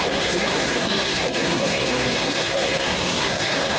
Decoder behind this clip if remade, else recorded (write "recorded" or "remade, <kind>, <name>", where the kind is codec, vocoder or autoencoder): remade, codec, SNAC